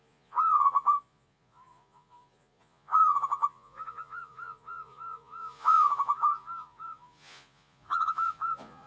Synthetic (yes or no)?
yes